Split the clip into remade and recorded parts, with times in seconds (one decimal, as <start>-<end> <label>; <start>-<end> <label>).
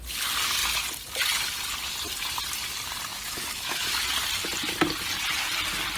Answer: 0.0-3.1 recorded; 3.1-4.0 remade; 4.0-6.0 recorded